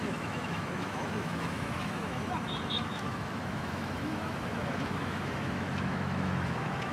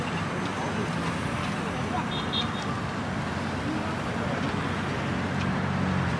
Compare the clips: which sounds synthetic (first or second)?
first